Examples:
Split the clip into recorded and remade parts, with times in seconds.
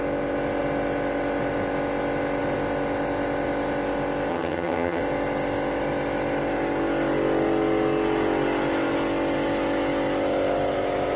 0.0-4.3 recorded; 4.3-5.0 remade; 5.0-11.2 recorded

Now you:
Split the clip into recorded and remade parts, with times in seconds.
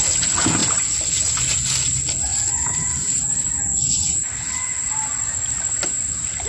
0.0-0.6 recorded; 0.6-1.2 remade; 1.2-6.5 recorded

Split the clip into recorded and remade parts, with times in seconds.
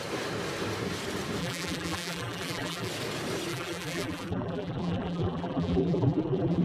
0.0-1.4 recorded; 1.4-2.9 remade; 2.9-3.5 recorded; 3.5-6.6 remade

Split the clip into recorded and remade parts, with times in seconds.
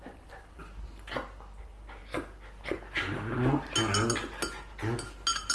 0.0-0.6 remade; 0.6-1.6 recorded; 1.6-2.0 remade; 2.0-5.5 recorded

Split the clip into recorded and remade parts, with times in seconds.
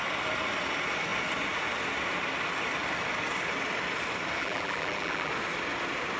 0.0-4.4 recorded; 4.4-5.3 remade; 5.3-6.2 recorded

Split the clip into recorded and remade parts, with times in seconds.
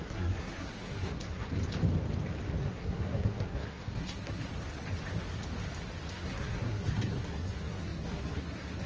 0.0-1.6 remade; 1.6-2.6 recorded; 2.6-4.5 remade; 4.5-6.1 recorded; 6.1-8.9 remade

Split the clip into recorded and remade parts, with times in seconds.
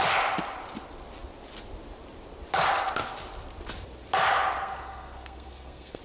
0.0-4.6 recorded; 4.6-6.0 remade